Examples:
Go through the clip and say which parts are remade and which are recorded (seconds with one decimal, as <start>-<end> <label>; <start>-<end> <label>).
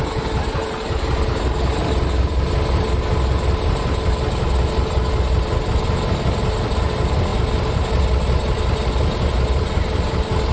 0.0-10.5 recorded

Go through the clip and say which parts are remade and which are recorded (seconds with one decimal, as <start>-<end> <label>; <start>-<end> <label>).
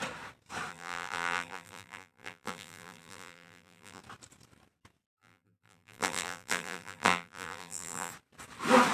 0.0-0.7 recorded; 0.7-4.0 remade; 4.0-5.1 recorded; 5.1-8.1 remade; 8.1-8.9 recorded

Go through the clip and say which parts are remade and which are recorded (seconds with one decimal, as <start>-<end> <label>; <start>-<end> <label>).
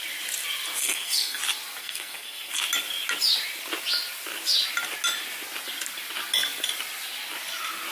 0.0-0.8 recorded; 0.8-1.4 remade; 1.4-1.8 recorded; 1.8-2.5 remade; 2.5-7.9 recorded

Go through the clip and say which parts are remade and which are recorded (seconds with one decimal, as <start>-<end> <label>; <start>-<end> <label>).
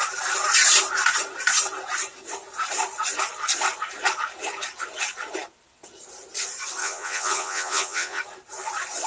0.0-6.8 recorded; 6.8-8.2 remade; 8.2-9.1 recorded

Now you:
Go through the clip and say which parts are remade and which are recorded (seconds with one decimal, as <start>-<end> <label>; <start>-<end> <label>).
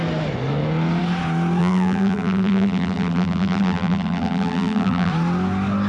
0.0-1.6 recorded; 1.6-5.1 remade; 5.1-5.9 recorded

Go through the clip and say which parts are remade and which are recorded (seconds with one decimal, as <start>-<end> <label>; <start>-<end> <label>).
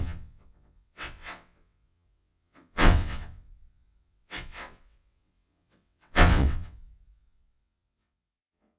0.0-8.8 remade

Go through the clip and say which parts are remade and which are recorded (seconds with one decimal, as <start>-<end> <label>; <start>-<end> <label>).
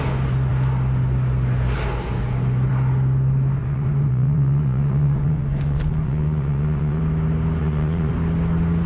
0.0-3.6 recorded; 3.6-7.0 remade; 7.0-7.6 recorded; 7.6-8.1 remade; 8.1-8.9 recorded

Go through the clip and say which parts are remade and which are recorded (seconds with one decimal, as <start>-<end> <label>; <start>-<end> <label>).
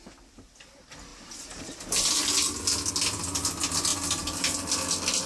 0.0-5.3 recorded